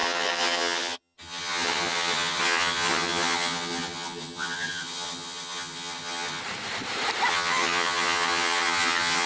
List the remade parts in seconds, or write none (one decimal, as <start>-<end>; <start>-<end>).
0.0-6.4; 7.3-9.3

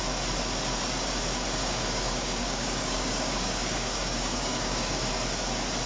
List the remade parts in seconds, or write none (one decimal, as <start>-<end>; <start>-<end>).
1.6-5.1

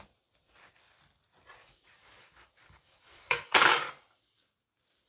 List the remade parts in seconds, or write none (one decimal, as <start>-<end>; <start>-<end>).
1.6-3.9

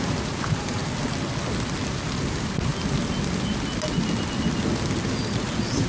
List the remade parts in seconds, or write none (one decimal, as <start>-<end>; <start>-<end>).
0.0-0.8; 1.9-2.7; 5.3-5.9

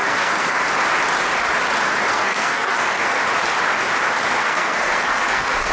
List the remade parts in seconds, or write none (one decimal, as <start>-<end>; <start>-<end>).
0.0-0.6; 2.1-3.2; 4.4-5.7